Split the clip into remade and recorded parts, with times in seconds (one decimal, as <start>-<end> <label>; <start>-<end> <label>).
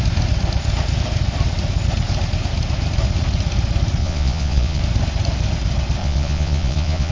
0.0-4.0 recorded; 4.0-4.8 remade; 4.8-6.0 recorded; 6.0-7.1 remade